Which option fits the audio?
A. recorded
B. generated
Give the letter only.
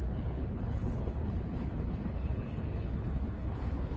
B